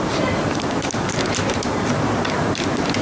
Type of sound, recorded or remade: remade